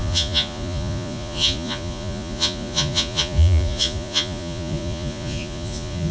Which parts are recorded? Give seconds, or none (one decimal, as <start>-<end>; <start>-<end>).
none